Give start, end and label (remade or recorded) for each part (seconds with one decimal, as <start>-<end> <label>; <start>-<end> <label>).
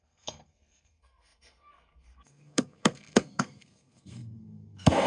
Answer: 0.0-5.1 remade